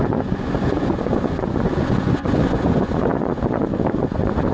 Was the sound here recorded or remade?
remade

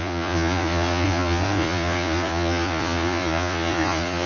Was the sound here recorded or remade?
remade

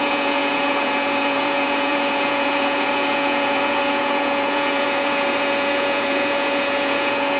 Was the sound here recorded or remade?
remade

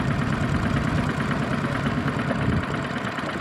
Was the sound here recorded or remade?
recorded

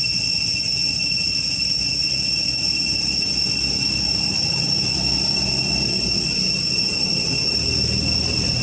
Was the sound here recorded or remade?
recorded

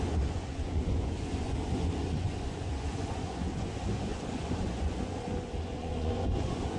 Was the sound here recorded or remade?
remade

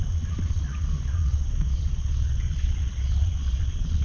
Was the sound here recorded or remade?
remade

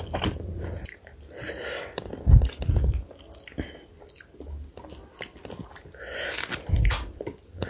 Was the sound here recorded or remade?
recorded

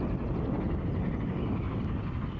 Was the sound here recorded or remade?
recorded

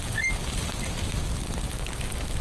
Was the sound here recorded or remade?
recorded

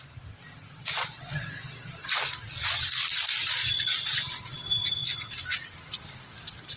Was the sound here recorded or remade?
recorded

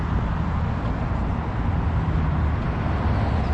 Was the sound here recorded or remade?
recorded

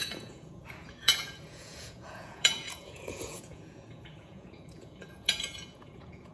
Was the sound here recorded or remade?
remade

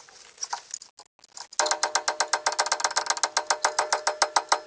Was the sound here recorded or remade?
recorded